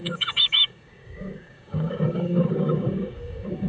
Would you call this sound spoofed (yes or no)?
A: yes